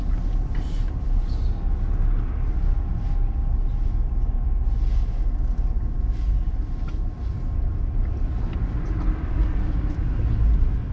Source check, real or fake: real